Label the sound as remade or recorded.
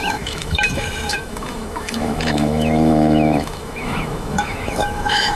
remade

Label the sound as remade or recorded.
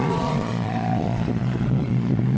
remade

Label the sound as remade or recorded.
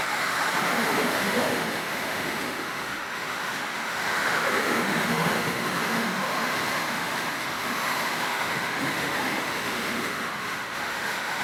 remade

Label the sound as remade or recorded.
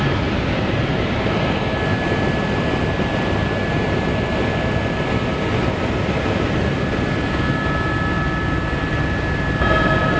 recorded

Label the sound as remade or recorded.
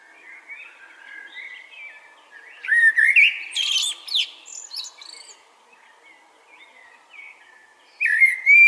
recorded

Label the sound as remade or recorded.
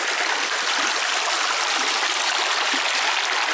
recorded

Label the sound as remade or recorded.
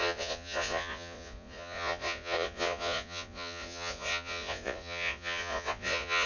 remade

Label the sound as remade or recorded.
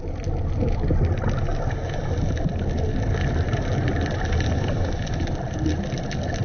recorded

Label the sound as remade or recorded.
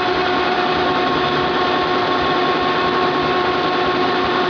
recorded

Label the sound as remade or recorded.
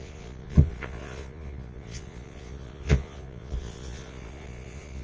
remade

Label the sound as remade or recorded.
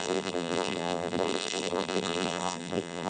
remade